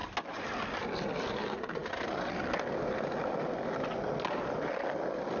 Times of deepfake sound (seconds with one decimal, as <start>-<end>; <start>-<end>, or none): none

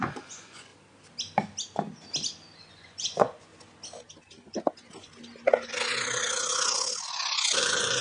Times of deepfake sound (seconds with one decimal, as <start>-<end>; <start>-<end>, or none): 0.0-0.7; 2.6-3.5; 7.6-8.0

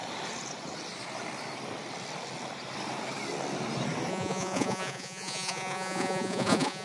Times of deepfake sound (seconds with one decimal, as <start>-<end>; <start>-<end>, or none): 4.1-6.8

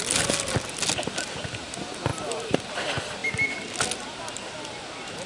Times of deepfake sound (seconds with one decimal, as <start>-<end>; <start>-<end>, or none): none

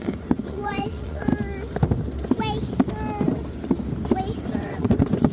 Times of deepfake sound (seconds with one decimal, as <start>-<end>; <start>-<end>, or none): 0.0-1.3; 4.5-5.3